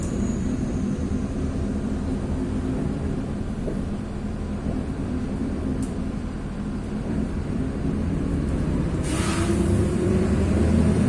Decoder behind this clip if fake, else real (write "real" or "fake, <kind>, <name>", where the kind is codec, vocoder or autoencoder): fake, vocoder, BigVGAN v2